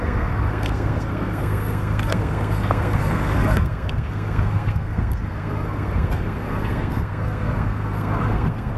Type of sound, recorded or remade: remade